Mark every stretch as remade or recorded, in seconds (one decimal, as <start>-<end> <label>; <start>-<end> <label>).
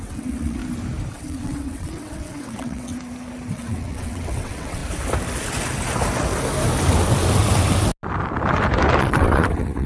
0.0-0.6 remade; 0.6-1.1 recorded; 1.1-2.9 remade; 2.9-3.5 recorded; 3.5-4.8 remade; 4.8-9.0 recorded; 9.0-9.9 remade